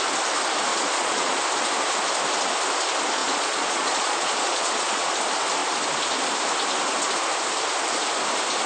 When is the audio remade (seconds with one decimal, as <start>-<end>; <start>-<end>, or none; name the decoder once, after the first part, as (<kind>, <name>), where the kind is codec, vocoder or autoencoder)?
0.7-1.4 (vocoder, Vocos); 3.2-5.1